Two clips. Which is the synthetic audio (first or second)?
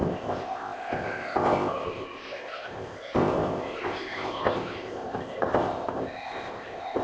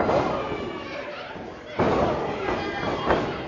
first